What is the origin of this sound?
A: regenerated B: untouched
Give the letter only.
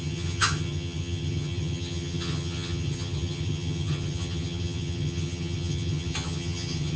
A